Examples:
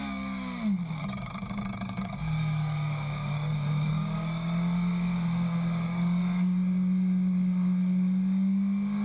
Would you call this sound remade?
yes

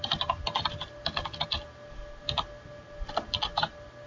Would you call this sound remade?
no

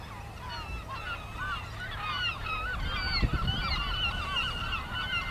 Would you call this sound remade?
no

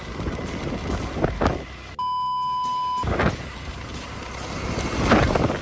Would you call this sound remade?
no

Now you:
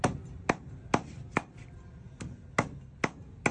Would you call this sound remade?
no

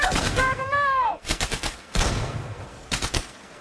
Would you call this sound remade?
yes